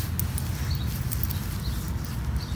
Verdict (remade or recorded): recorded